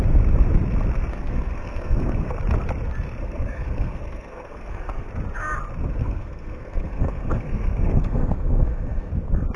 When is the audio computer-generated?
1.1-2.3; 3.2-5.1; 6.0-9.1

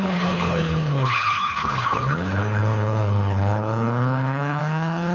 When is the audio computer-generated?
0.0-5.1

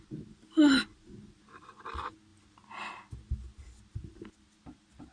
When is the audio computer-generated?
none

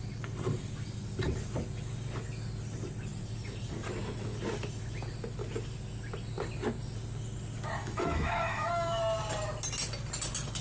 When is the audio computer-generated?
7.8-9.0

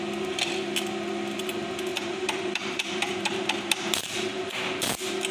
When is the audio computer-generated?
1.9-4.5